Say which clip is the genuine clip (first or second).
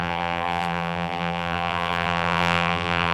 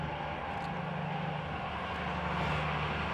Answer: second